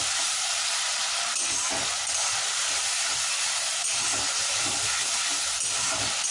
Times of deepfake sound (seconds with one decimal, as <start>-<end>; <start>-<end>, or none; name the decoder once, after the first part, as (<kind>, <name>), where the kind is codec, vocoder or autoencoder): none